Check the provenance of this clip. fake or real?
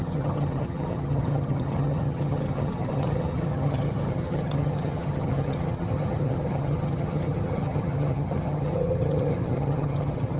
fake